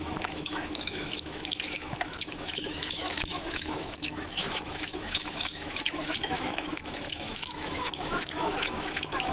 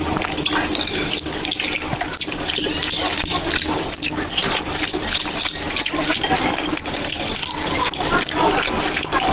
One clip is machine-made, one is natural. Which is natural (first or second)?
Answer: second